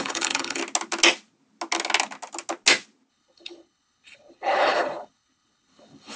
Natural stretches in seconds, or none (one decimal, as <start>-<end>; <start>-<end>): 0.6-3.1